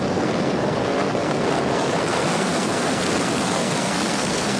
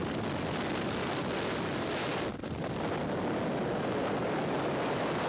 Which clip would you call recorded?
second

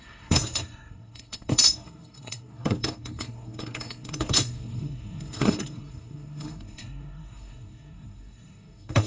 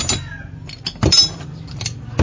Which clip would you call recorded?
second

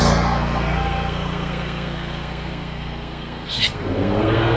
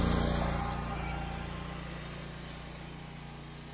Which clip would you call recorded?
second